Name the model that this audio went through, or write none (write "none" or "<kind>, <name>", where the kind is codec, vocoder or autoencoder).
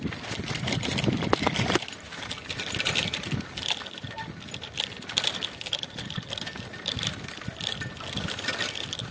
none